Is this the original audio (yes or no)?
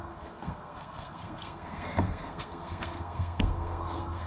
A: no